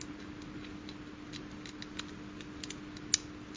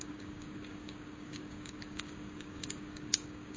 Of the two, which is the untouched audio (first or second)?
first